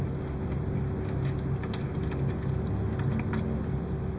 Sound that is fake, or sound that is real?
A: real